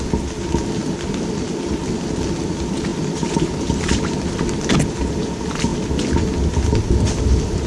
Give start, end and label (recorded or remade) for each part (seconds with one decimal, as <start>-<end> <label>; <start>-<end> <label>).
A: 0.0-7.7 recorded